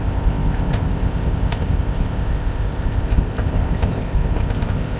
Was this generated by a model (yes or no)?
yes